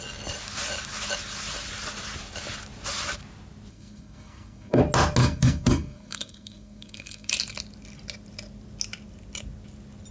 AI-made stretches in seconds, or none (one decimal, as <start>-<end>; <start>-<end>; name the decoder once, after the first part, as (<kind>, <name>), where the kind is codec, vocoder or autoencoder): 3.7-4.8 (codec, SNAC); 5.2-7.3